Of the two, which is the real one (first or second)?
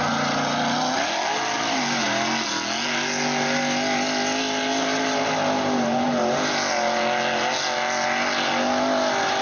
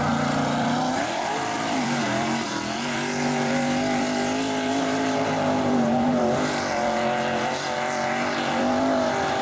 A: first